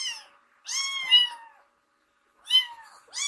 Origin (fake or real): real